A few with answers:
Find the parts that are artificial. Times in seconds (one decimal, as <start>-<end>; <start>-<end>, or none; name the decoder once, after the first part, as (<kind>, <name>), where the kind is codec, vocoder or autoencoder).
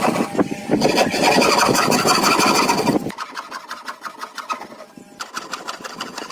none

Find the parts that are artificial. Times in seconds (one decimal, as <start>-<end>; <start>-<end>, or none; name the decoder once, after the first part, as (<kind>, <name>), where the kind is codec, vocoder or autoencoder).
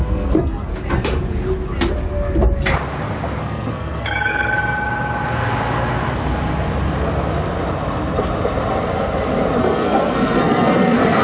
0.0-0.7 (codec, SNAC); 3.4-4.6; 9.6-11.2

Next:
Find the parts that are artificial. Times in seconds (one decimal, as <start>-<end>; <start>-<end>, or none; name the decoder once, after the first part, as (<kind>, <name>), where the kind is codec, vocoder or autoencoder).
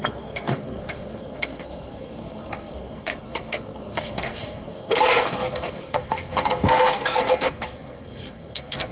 0.0-8.9 (codec, SNAC)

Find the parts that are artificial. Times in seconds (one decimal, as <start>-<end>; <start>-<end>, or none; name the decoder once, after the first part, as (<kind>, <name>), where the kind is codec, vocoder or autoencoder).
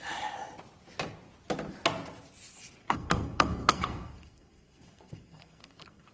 2.8-6.1 (codec, SNAC)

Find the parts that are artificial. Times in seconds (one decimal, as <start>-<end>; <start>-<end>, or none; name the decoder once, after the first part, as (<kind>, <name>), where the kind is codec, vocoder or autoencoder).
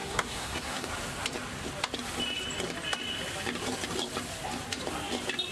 0.0-0.9 (codec, SNAC)